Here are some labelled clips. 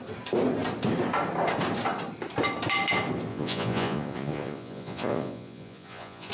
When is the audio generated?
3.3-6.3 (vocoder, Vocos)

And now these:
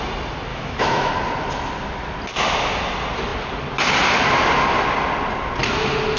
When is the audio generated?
0.5-1.1 (autoencoder, DAC-VAE)

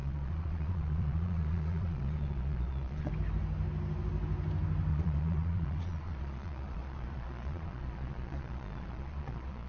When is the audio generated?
0.0-3.1 (vocoder, Vocos); 4.9-9.7

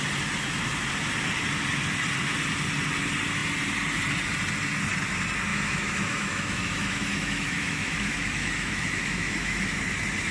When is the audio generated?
5.5-9.8 (autoencoder, DAC-VAE)

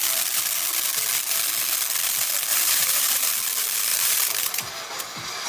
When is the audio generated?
2.5-3.3 (vocoder, BigVGAN v2); 3.9-5.0

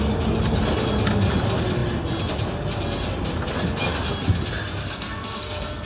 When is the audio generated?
4.8-5.9 (codec, SNAC)